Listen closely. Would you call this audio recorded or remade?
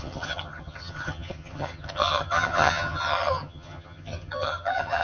remade